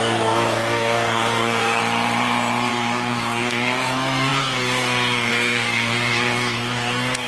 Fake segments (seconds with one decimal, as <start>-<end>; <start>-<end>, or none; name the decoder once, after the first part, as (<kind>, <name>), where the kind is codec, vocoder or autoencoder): 0.0-1.8 (codec, DAC); 2.7-7.3